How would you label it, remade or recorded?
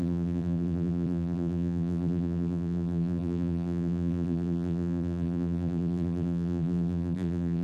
remade